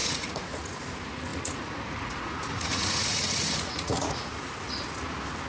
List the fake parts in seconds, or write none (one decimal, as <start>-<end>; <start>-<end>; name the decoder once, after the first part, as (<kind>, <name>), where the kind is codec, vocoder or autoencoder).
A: 0.0-0.8 (vocoder, Vocos); 1.3-4.4